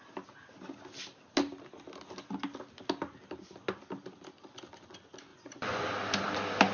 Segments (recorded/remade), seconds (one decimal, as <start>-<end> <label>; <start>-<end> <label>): 0.0-5.3 recorded; 5.3-5.9 remade; 5.9-6.7 recorded